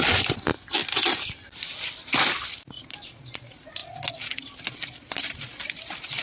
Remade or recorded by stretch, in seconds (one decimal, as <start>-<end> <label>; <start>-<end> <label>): 0.0-3.8 remade; 3.8-4.6 recorded; 4.6-6.2 remade